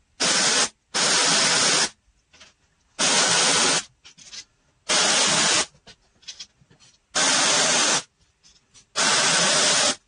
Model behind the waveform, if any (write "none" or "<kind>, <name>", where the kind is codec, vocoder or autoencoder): none